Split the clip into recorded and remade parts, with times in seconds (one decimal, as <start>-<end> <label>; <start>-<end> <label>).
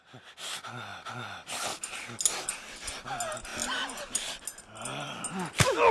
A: 0.0-5.9 recorded